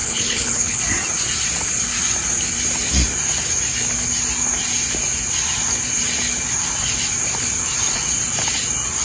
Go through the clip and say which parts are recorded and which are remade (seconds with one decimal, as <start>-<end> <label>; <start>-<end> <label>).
0.0-0.8 remade; 0.8-9.0 recorded